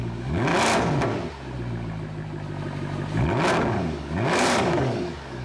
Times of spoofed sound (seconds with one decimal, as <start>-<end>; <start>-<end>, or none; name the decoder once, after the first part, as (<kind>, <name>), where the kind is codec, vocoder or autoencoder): 0.0-0.5 (codec, DAC); 3.7-5.4